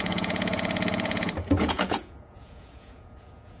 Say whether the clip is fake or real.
fake